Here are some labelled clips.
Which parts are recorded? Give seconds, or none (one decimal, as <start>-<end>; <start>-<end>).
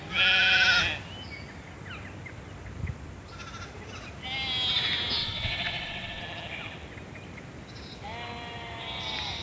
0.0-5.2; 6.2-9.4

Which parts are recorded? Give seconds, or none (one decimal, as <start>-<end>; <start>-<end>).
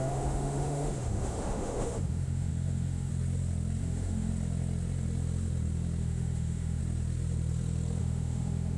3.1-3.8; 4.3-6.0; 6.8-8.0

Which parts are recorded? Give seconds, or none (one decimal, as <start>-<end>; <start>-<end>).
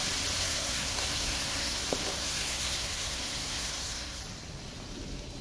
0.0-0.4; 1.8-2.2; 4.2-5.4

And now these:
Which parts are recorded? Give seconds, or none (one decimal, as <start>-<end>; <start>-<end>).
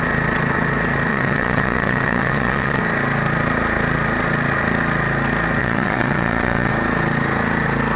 0.0-1.1; 2.8-5.6; 6.7-8.0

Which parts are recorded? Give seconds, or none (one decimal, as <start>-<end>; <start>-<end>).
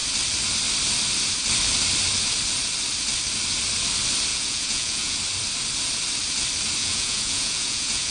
0.0-4.3; 5.2-6.8